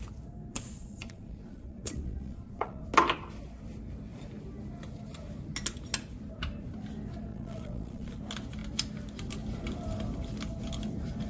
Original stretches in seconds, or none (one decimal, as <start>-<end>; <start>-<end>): 0.0-0.5; 2.8-7.3; 8.1-11.3